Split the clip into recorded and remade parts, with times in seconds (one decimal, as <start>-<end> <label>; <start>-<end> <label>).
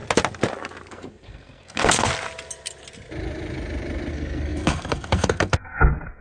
0.0-0.9 recorded; 0.9-2.1 remade; 2.1-4.1 recorded; 4.1-6.2 remade